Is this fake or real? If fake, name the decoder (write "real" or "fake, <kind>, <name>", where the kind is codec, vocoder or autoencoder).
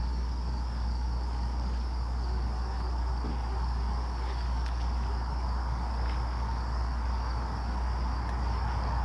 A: fake, codec, DAC